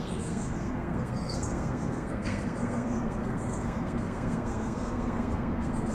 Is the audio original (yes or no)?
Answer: no